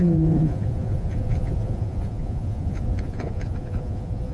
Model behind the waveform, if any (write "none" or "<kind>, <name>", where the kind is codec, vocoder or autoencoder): vocoder, Vocos